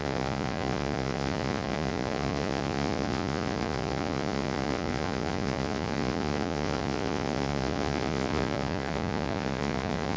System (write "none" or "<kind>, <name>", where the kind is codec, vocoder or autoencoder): vocoder, Vocos